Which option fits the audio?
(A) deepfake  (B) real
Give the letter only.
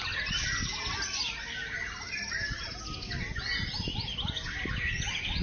B